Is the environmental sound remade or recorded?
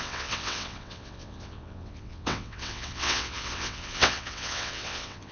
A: remade